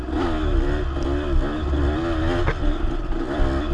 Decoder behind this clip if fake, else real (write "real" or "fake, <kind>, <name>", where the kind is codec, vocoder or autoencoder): real